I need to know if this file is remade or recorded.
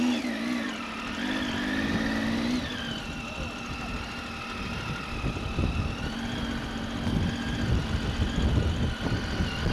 recorded